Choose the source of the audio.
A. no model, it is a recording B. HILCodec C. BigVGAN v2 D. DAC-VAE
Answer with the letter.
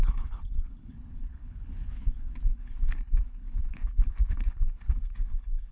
B